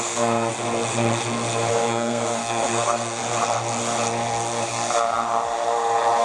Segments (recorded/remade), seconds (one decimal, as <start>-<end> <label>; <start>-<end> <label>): 0.0-0.5 remade; 0.5-1.7 recorded; 1.7-3.2 remade; 3.2-6.2 recorded